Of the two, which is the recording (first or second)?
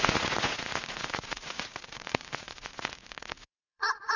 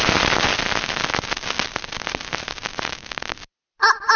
second